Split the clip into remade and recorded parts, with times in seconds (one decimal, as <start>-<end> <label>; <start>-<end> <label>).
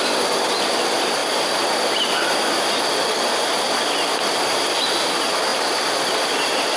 0.0-6.8 recorded